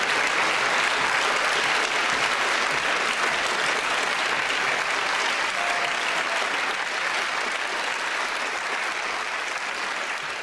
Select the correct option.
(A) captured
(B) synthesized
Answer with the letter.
A